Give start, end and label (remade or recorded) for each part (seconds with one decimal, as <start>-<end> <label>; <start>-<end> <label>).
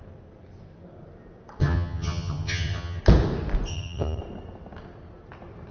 0.0-1.6 recorded; 1.6-3.0 remade; 3.0-3.7 recorded; 3.7-4.2 remade; 4.2-5.7 recorded